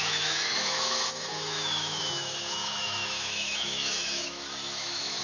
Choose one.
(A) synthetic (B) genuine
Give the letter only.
A